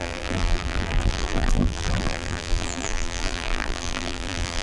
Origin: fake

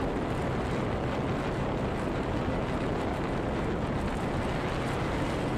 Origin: real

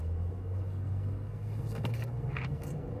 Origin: fake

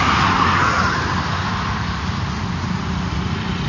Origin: real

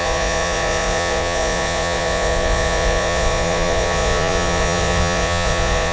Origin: fake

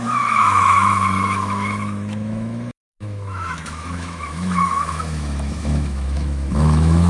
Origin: fake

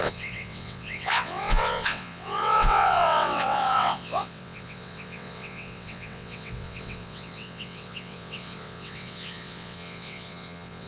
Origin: fake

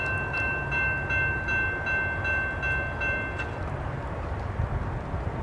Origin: real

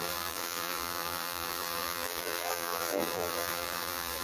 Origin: fake